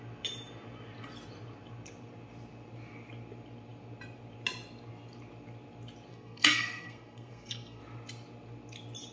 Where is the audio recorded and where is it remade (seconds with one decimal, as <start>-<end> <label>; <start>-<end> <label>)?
0.0-6.1 recorded; 6.1-7.8 remade; 7.8-9.1 recorded